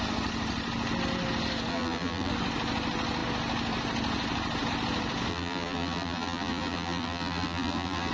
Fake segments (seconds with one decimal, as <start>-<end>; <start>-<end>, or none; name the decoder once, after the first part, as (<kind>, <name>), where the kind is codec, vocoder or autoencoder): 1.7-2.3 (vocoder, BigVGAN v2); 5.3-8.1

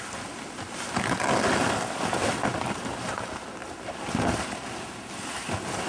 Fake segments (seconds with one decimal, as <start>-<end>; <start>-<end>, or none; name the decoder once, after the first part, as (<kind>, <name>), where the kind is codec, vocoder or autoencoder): none

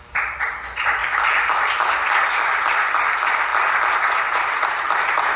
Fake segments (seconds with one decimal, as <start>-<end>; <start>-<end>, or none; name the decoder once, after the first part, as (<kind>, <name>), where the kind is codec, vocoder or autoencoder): none